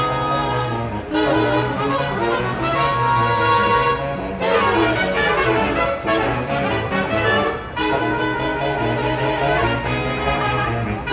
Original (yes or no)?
yes